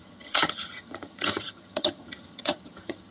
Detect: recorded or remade remade